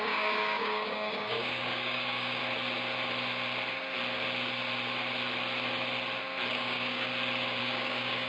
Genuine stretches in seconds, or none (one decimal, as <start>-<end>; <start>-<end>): 2.4-6.5; 7.1-7.6